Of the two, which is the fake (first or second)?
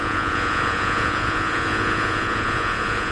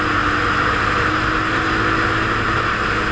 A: first